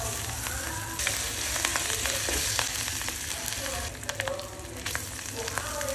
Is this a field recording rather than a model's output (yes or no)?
yes